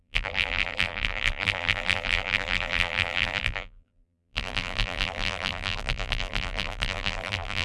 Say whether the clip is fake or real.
fake